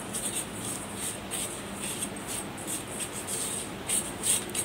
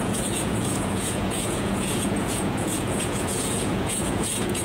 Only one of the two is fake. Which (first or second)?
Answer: second